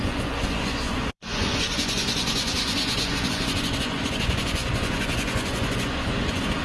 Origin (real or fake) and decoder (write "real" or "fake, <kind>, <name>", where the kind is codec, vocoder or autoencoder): fake, vocoder, Vocos